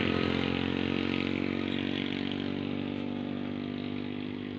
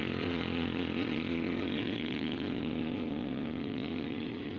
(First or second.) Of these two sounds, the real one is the first